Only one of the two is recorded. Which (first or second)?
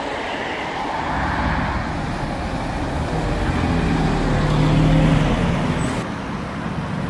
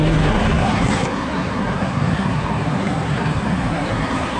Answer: first